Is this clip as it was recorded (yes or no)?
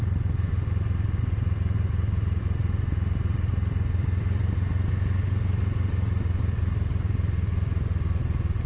yes